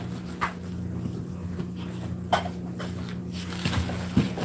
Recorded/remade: recorded